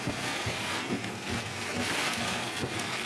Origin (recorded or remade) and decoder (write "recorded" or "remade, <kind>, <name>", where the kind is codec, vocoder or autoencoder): remade, codec, SNAC